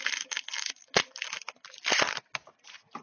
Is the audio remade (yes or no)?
no